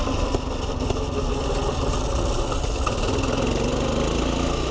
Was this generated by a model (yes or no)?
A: no